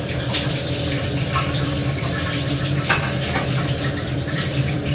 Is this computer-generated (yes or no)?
yes